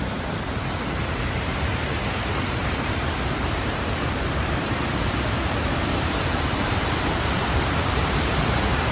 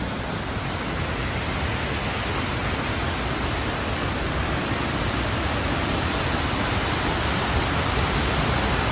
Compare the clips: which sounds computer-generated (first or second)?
first